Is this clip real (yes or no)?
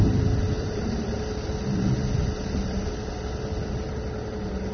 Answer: no